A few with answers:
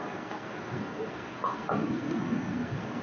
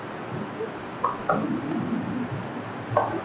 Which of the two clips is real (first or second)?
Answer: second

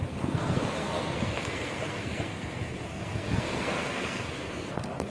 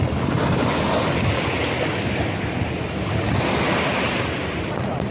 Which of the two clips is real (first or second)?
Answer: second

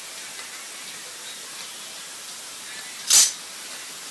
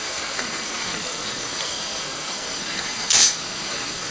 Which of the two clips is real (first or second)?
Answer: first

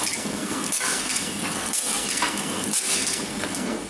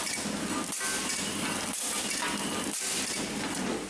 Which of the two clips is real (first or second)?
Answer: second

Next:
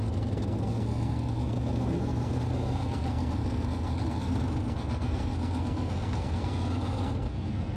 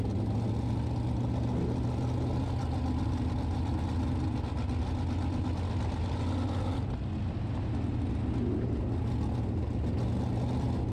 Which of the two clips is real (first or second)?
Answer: second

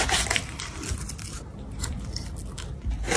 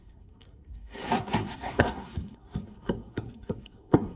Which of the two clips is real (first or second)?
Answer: first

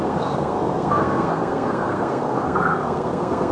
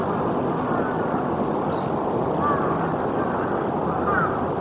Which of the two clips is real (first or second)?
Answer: second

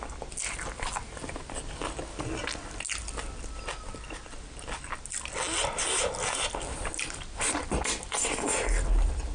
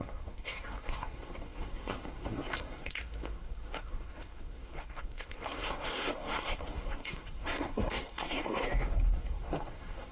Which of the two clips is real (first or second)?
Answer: first